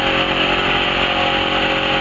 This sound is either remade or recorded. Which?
recorded